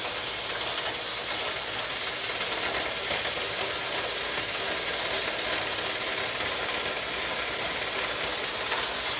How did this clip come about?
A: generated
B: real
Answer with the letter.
B